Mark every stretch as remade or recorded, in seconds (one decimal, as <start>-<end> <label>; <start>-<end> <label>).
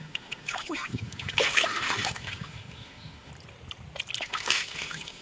0.0-3.3 remade; 3.3-4.2 recorded; 4.2-5.2 remade